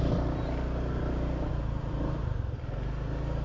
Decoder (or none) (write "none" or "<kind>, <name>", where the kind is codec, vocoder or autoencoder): none